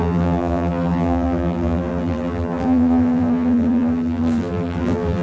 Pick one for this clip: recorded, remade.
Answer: remade